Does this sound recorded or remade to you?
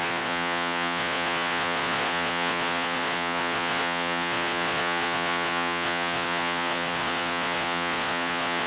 remade